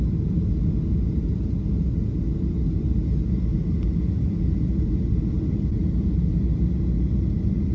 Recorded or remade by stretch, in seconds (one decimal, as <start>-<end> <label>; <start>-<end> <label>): 0.0-7.7 recorded